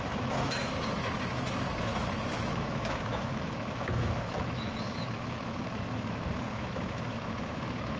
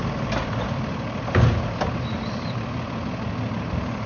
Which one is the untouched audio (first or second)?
second